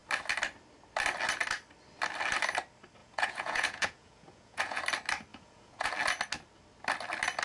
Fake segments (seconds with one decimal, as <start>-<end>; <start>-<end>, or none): 3.0-4.8; 5.3-5.9